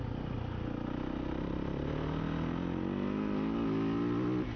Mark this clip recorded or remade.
recorded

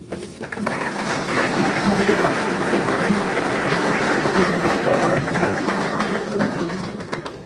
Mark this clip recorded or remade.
remade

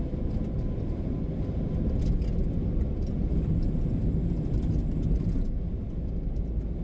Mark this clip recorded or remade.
recorded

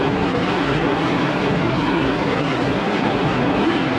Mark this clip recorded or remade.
remade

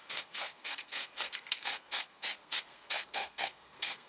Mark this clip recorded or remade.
remade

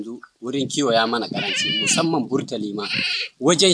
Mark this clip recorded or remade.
recorded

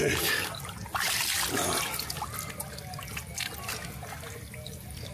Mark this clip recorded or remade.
recorded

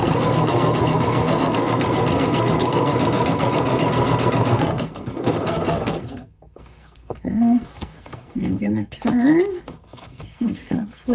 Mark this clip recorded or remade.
remade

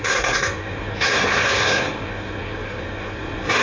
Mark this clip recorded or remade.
remade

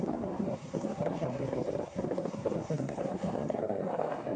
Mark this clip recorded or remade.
remade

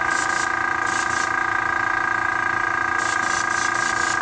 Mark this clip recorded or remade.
recorded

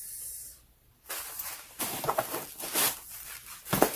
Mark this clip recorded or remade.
recorded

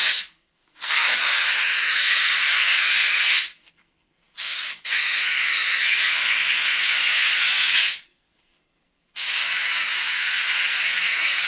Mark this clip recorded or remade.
remade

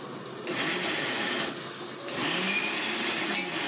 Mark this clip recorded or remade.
recorded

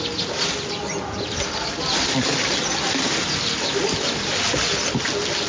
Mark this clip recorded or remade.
recorded